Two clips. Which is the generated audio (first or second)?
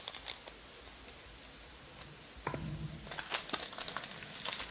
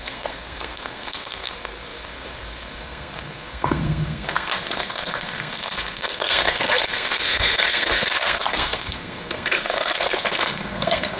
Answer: second